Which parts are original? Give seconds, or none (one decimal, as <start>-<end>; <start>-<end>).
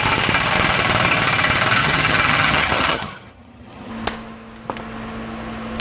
0.0-1.8; 3.9-5.8